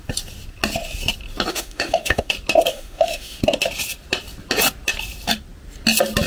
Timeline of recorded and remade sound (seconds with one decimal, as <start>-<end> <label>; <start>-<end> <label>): 0.0-1.5 recorded; 1.5-2.3 remade; 2.3-2.7 recorded; 2.7-3.4 remade; 3.4-6.3 recorded